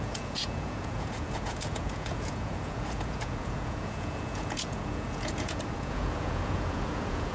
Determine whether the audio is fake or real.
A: fake